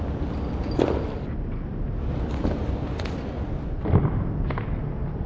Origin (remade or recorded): recorded